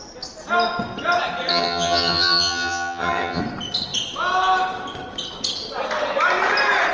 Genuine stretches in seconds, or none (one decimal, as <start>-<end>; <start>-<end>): 0.0-1.5; 3.4-6.9